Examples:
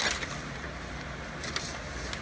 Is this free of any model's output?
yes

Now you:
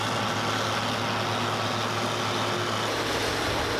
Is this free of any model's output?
yes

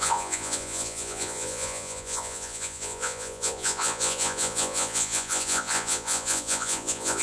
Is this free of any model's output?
no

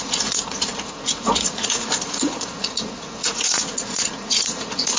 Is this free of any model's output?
no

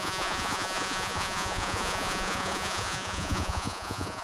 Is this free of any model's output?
no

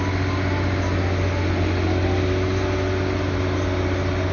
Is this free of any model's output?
yes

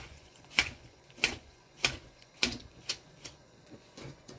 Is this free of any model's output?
no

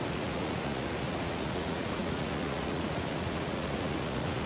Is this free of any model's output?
no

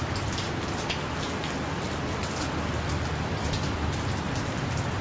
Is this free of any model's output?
yes